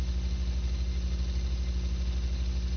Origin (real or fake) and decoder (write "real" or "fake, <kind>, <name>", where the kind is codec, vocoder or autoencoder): real